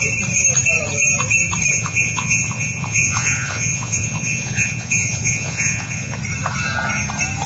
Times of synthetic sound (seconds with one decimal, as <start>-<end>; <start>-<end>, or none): 1.7-6.2